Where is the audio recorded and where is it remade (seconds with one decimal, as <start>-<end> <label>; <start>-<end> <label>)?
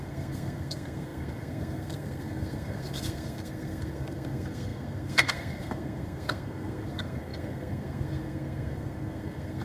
0.0-9.6 remade